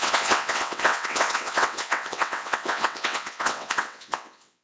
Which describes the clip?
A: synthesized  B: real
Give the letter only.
A